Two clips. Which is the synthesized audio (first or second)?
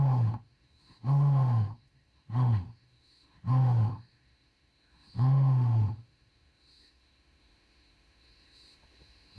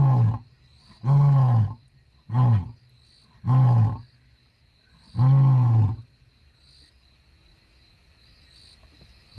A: first